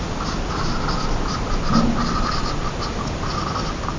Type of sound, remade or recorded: recorded